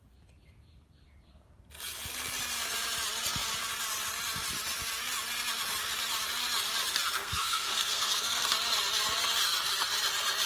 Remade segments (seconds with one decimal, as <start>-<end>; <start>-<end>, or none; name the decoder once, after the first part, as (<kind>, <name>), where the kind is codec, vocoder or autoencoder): 7.2-8.5 (codec, SNAC)